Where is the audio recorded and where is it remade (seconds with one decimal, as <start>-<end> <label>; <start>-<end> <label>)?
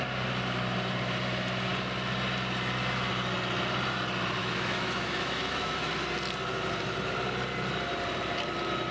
0.0-4.4 recorded; 4.4-5.9 remade; 5.9-8.9 recorded